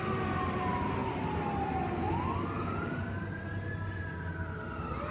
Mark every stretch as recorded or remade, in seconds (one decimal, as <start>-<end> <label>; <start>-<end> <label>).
0.0-5.1 recorded